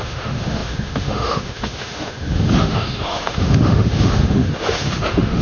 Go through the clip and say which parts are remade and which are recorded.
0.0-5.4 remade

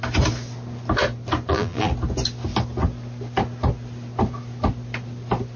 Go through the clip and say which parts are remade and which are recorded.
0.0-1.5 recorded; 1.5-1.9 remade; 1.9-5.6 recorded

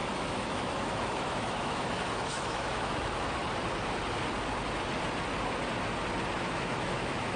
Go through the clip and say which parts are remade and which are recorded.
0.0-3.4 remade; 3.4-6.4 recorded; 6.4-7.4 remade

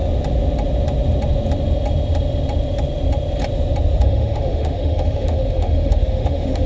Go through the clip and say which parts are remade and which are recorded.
0.0-4.0 recorded; 4.0-6.7 remade

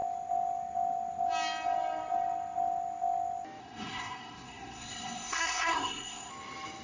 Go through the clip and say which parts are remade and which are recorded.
0.0-3.6 recorded; 3.6-6.3 remade; 6.3-6.8 recorded

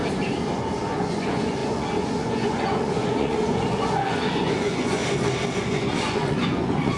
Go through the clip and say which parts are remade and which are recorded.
0.0-0.5 recorded; 0.5-5.0 remade; 5.0-5.6 recorded; 5.6-7.0 remade

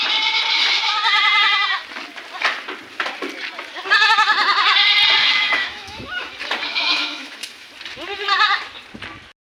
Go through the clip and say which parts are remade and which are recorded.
0.0-5.2 recorded; 5.2-6.3 remade; 6.3-6.7 recorded; 6.7-7.7 remade; 7.7-9.6 recorded

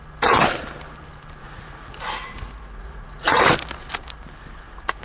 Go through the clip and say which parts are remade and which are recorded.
0.0-1.4 recorded; 1.4-3.4 remade; 3.4-5.0 recorded